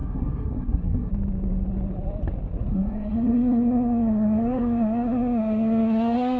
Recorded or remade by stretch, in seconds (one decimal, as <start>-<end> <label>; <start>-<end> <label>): 0.0-1.1 remade; 1.1-2.7 recorded; 2.7-6.4 remade